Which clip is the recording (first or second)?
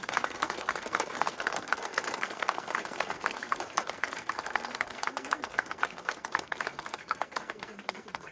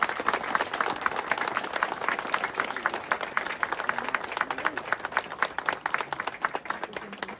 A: second